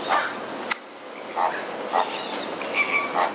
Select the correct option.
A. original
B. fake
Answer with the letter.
A